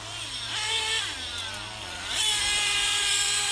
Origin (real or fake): real